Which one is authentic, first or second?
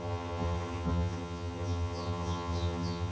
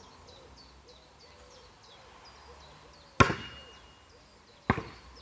second